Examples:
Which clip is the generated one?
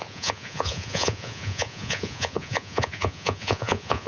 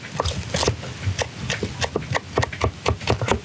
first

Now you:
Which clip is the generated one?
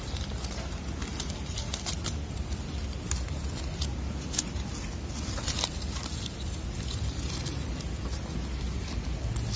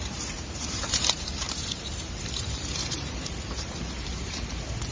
second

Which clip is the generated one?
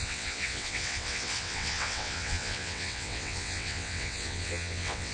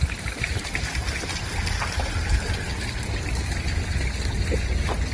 first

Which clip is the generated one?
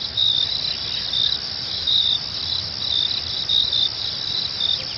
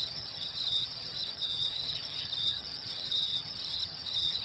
second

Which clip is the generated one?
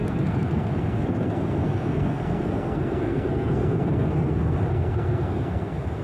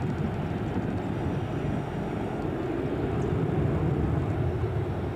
first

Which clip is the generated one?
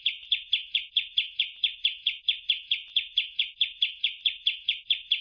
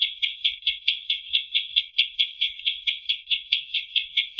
second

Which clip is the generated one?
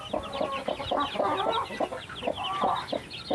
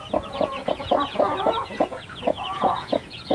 second